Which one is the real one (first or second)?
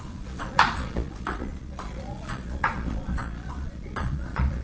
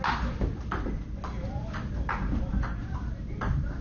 second